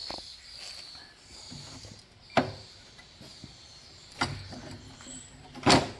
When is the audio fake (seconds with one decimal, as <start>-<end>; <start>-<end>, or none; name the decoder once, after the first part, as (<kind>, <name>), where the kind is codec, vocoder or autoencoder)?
3.3-4.5 (vocoder, BigVGAN v2)